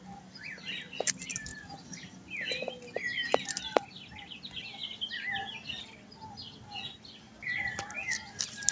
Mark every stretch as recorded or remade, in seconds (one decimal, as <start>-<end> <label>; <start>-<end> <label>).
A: 0.0-8.7 recorded